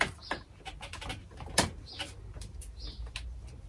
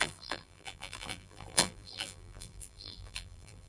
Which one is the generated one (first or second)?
second